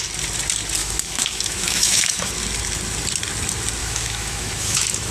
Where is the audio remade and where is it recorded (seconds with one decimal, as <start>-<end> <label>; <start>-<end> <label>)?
0.0-0.8 recorded; 0.8-2.3 remade; 2.3-3.8 recorded; 3.8-5.1 remade